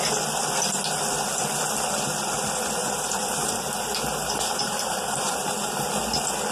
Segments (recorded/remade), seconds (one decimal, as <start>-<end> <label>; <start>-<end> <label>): 0.0-2.8 recorded; 2.8-3.7 remade; 3.7-4.2 recorded; 4.2-5.9 remade; 5.9-6.5 recorded